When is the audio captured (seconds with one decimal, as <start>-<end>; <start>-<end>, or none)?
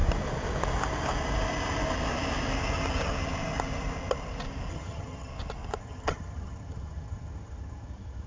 0.0-4.7; 5.3-5.8